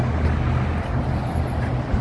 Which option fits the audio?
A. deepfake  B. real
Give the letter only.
B